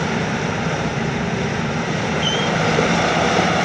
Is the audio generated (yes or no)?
yes